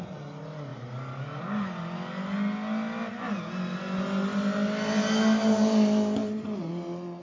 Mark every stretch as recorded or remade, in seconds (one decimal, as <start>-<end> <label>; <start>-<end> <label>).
0.0-7.2 recorded